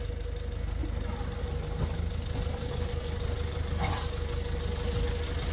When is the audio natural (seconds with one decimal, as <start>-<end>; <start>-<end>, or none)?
0.0-5.5